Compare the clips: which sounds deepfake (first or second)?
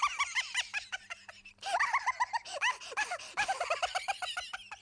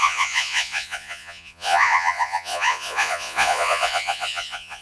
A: second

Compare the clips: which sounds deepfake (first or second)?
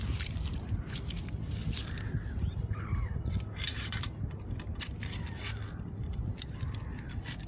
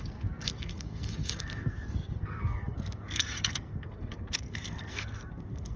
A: second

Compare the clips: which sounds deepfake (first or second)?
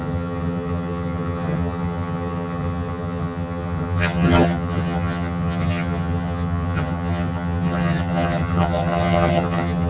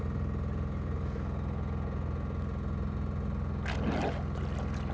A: first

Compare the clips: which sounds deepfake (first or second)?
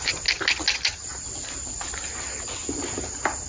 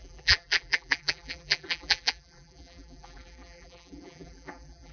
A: second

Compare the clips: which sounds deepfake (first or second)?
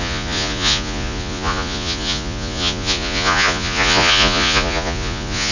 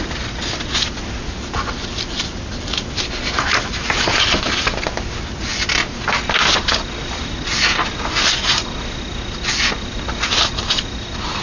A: first